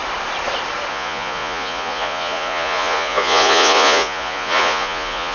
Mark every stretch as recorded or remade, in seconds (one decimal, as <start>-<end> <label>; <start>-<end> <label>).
0.0-0.9 recorded; 0.9-5.3 remade

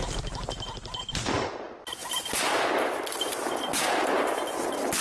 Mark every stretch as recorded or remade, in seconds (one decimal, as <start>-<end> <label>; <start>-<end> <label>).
0.0-5.0 recorded

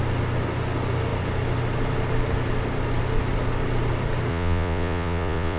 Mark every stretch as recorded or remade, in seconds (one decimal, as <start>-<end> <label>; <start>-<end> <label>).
0.0-4.3 recorded; 4.3-5.6 remade

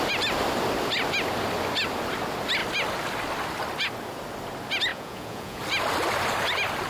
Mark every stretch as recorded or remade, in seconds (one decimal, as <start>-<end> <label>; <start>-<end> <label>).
0.0-4.9 recorded; 4.9-5.6 remade; 5.6-6.9 recorded